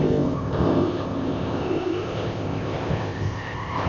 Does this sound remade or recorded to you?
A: remade